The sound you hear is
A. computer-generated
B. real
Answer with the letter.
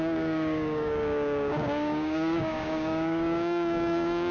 A